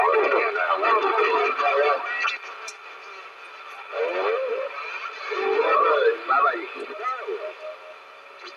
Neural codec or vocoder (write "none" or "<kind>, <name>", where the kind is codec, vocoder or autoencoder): none